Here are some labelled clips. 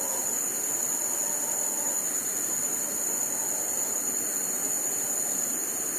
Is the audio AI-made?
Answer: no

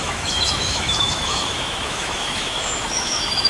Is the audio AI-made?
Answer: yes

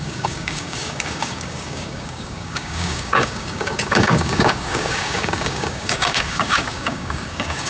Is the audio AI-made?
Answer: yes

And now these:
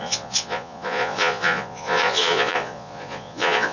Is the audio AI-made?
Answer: yes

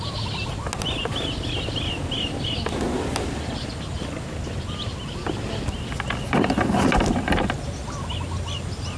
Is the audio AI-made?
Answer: no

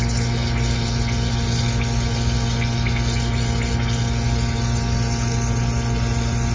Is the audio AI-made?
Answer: no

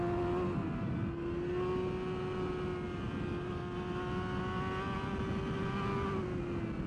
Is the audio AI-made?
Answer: no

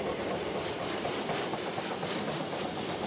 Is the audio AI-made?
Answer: yes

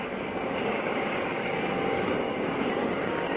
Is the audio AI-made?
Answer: yes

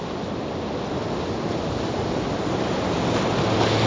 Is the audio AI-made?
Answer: no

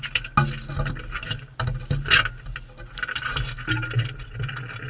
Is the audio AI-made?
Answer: no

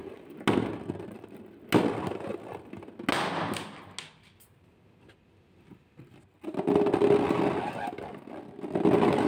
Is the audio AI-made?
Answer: no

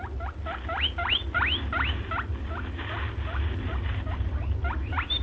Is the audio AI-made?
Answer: no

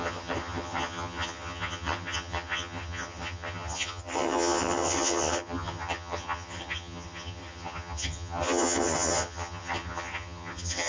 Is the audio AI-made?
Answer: yes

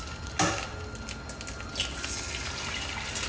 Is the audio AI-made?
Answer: no